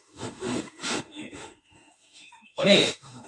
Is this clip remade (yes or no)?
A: yes